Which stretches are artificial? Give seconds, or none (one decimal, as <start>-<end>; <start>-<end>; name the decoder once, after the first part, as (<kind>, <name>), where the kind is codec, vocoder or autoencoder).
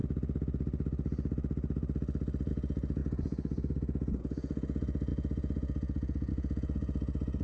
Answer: 2.5-7.4 (vocoder, Vocos)